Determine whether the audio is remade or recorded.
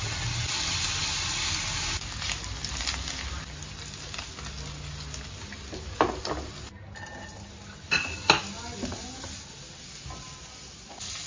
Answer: recorded